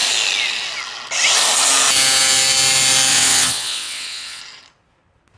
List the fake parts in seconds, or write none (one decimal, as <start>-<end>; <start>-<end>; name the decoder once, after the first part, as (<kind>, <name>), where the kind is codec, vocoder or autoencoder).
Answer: 3.1-4.4 (vocoder, WaveNeXt)